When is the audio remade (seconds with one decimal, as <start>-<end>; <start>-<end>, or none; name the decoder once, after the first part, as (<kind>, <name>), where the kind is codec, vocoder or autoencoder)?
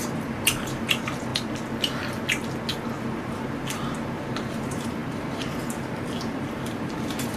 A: 0.0-1.3 (vocoder, BigVGAN v2); 3.0-7.4